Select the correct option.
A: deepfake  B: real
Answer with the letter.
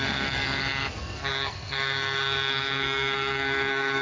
A